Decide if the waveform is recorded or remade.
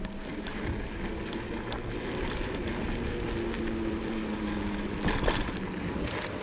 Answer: recorded